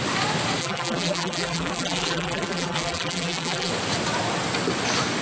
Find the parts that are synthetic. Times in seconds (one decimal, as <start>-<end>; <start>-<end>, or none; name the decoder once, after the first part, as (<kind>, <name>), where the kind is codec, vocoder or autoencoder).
0.6-3.7 (vocoder, BigVGAN v2)